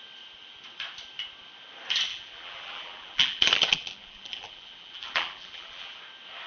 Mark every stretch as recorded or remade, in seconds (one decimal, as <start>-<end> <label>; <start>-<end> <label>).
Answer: 0.0-2.1 recorded; 2.1-6.0 remade; 6.0-6.5 recorded